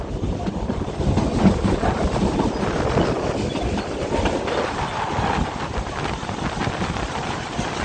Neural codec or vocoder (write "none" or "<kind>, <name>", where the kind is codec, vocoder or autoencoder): none